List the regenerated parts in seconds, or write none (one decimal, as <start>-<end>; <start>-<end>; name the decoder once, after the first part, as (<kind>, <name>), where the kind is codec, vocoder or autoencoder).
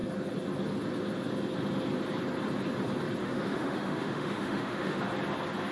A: 3.2-5.0 (autoencoder, DAC-VAE)